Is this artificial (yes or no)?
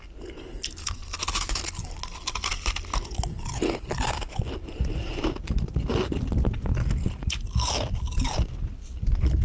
no